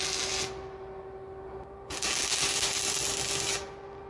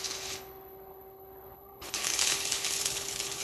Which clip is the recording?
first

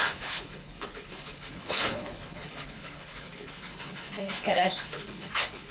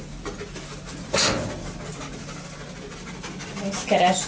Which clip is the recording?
second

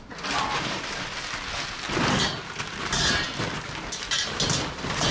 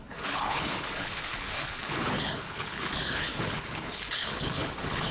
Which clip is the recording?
first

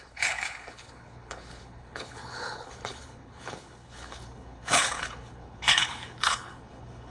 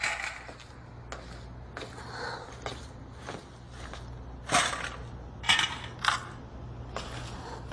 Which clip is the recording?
second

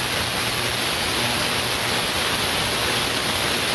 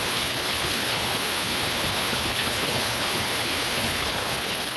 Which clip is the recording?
first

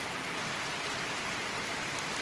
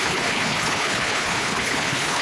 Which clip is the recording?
first